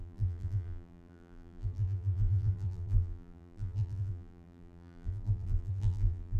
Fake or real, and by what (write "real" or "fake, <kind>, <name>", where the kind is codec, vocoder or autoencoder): fake, vocoder, BigVGAN v2